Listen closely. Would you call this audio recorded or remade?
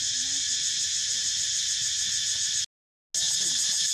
recorded